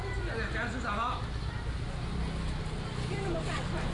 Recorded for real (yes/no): yes